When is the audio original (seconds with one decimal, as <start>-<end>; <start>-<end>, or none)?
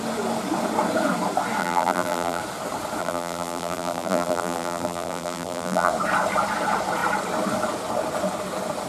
0.0-1.6; 2.4-3.0; 5.9-8.9